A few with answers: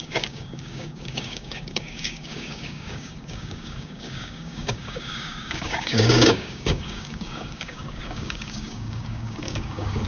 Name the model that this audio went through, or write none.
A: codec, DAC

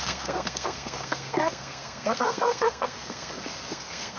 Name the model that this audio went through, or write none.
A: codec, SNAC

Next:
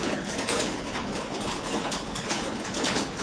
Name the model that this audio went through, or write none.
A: codec, HILCodec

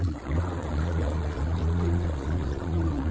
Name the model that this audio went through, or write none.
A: vocoder, Vocos